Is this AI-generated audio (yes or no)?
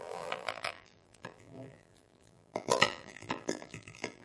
yes